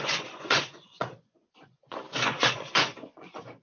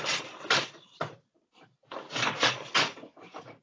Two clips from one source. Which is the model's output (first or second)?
first